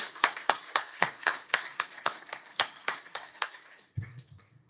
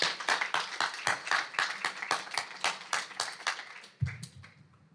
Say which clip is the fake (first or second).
first